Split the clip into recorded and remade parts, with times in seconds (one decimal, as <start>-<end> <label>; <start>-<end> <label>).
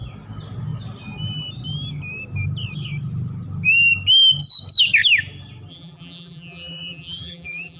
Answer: 0.0-5.7 recorded; 5.7-7.8 remade